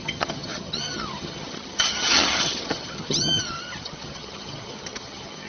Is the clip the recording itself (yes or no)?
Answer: no